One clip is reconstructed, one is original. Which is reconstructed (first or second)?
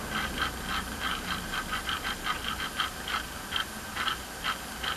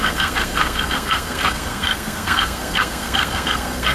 second